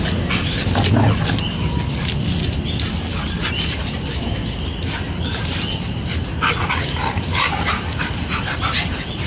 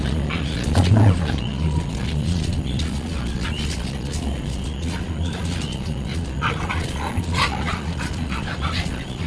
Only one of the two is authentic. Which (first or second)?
first